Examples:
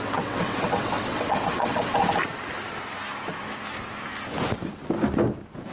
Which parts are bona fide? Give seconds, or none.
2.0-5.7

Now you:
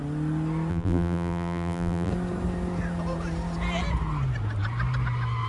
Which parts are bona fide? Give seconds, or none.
0.0-0.7; 2.1-5.5

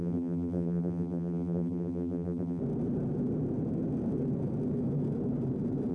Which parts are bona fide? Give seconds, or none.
2.6-5.9

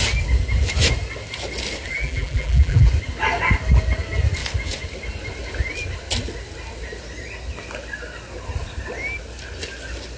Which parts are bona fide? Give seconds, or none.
0.0-1.9; 2.9-10.2

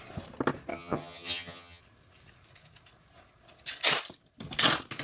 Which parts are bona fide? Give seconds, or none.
0.0-0.7; 1.8-5.0

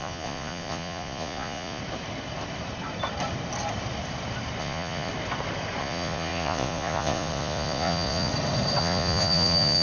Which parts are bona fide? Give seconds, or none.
1.8-4.6; 5.1-5.8; 8.3-8.8